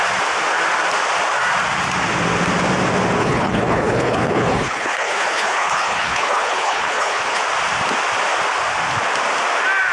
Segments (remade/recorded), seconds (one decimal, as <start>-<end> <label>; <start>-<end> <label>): 0.0-3.2 recorded; 3.2-7.4 remade; 7.4-9.9 recorded

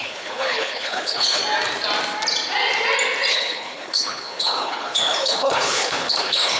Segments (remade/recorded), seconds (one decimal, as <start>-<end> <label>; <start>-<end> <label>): 0.0-1.4 remade; 1.4-3.3 recorded; 3.3-6.6 remade